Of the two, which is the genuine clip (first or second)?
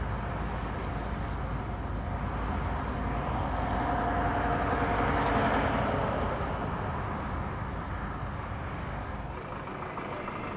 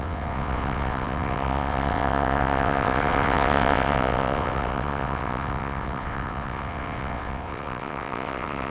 first